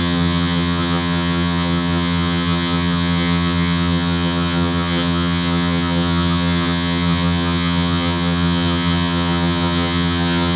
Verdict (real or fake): fake